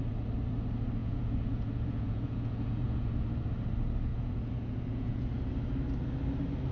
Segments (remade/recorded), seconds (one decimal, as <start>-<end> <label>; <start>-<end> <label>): 0.0-1.0 recorded; 1.0-3.2 remade; 3.2-4.1 recorded; 4.1-5.5 remade; 5.5-6.7 recorded